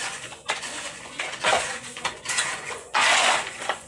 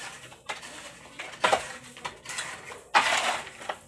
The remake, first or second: first